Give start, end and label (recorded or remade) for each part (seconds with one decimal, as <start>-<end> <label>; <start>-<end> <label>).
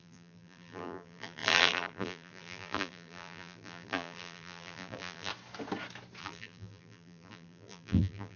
0.0-5.3 remade; 5.3-6.2 recorded; 6.2-8.4 remade